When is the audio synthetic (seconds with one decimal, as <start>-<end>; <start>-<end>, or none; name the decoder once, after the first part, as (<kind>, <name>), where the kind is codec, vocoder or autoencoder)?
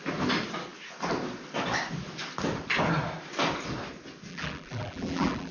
4.3-5.5 (vocoder, BigVGAN v2)